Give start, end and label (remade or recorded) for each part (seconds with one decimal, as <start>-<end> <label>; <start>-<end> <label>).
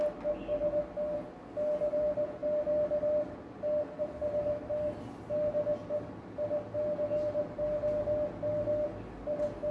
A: 0.0-9.7 recorded